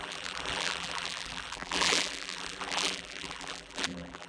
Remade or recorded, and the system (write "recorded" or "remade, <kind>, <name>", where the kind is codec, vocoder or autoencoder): remade, vocoder, BigVGAN v2